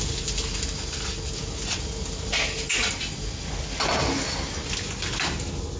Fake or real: real